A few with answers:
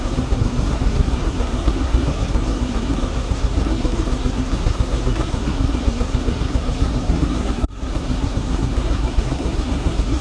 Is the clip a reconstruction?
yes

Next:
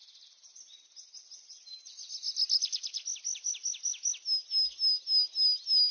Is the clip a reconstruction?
no